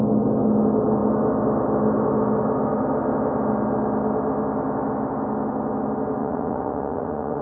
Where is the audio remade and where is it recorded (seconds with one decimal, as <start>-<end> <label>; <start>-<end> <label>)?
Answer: 0.0-6.2 recorded; 6.2-7.4 remade